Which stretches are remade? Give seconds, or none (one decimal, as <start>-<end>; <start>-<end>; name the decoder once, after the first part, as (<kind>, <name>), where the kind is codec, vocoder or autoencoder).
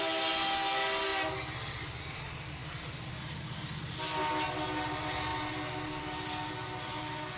none